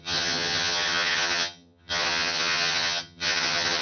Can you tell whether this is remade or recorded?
remade